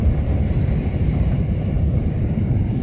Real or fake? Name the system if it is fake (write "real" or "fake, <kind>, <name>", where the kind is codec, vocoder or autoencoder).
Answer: fake, vocoder, BigVGAN v2